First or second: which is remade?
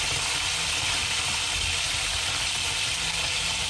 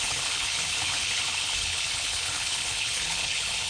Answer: second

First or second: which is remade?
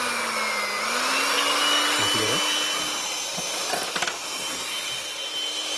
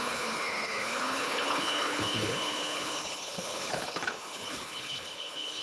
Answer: second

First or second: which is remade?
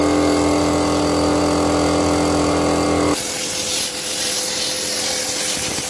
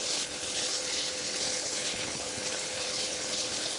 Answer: second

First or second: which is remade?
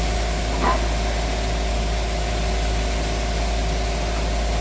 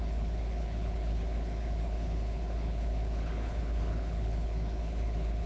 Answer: second